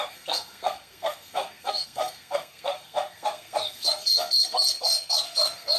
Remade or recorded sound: remade